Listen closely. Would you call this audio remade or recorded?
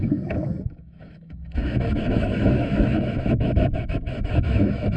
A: remade